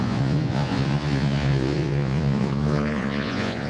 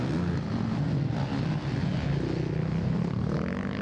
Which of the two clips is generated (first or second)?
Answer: first